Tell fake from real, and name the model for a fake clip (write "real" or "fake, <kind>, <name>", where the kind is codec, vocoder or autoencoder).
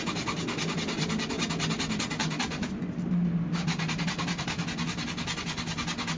real